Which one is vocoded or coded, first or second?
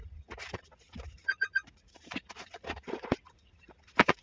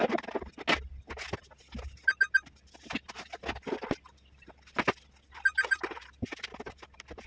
first